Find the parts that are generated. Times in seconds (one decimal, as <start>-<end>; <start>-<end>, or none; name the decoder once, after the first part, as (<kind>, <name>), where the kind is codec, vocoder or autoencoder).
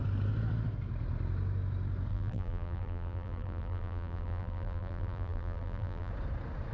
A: 2.1-6.1 (vocoder, BigVGAN v2)